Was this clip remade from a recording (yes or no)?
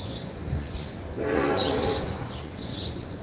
yes